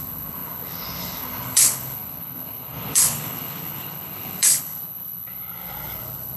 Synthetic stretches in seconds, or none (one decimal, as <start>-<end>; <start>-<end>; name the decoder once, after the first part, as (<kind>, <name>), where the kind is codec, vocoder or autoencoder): 0.0-6.4 (codec, HILCodec)